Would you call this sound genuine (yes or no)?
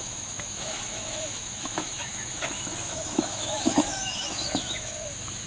no